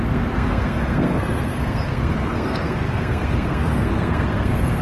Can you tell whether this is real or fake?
fake